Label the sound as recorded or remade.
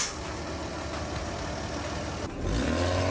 recorded